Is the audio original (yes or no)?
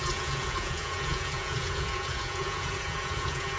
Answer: no